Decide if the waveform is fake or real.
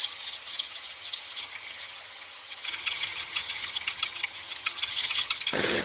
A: fake